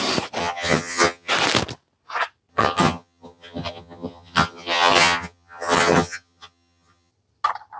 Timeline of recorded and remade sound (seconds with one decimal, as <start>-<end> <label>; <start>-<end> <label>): 0.0-0.4 recorded; 0.4-1.3 remade; 1.3-2.5 recorded; 2.5-7.1 remade; 7.1-7.8 recorded